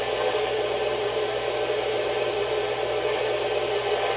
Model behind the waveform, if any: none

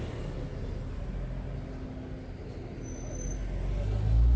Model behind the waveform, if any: none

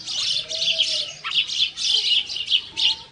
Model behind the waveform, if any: none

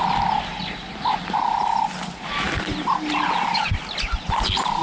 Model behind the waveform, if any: none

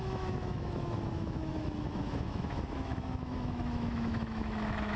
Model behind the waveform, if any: autoencoder, DAC-VAE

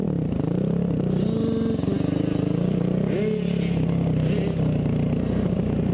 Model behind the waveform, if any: none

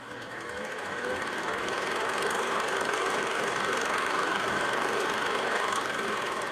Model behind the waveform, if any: codec, DAC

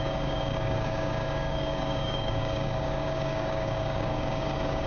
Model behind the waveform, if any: codec, DAC